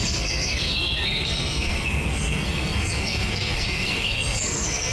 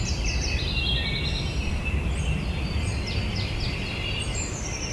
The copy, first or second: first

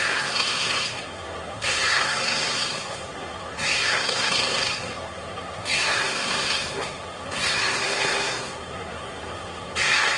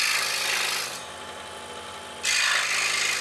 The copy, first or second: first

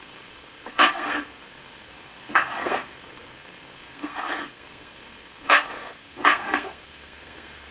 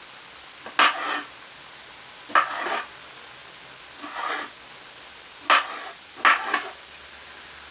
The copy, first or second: first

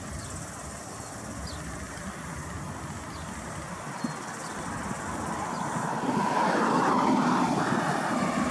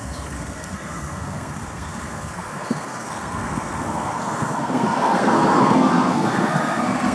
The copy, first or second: second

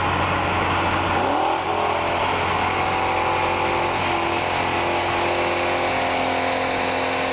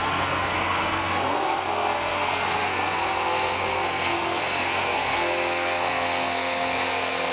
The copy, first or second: second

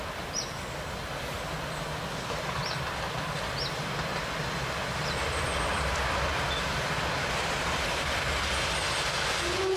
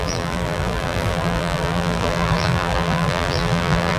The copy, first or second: second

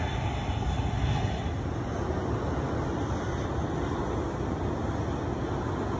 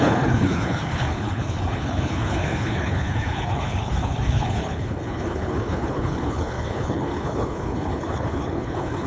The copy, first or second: second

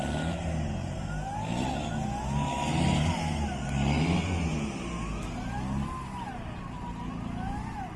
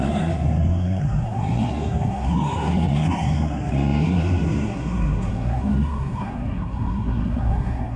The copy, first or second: second